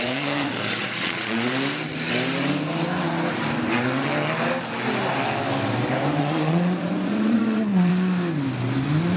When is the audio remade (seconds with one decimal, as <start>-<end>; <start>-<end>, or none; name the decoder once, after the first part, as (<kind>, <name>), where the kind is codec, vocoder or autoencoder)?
0.0-1.5 (vocoder, Vocos); 6.2-7.9

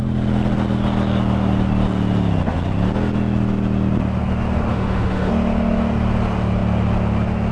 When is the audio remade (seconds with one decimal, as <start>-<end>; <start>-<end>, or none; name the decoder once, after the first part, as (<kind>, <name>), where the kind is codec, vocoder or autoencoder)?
4.7-5.3 (autoencoder, DAC-VAE)

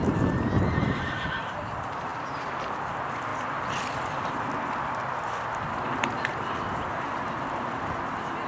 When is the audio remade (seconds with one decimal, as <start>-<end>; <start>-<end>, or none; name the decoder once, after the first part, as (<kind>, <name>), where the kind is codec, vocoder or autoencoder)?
none

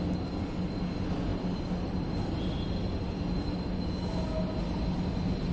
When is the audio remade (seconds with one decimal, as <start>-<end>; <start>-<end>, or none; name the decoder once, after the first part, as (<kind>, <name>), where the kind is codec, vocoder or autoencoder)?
none

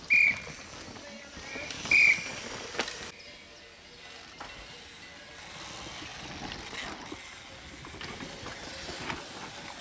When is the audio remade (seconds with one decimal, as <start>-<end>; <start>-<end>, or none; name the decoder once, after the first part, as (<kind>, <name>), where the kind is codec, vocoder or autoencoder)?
none

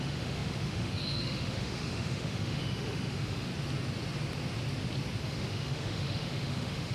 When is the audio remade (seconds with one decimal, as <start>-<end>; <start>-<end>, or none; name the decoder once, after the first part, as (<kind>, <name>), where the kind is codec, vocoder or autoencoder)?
0.0-3.5 (autoencoder, DAC-VAE); 5.2-6.9